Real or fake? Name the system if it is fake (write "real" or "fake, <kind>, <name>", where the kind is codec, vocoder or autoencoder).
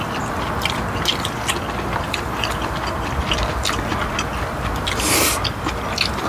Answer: real